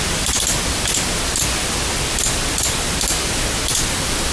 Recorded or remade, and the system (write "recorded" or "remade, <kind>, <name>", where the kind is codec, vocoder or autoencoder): recorded